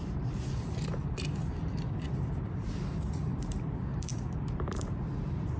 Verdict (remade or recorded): remade